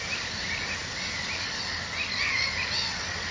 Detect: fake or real fake